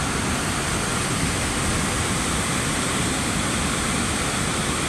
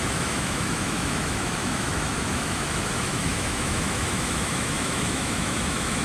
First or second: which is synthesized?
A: second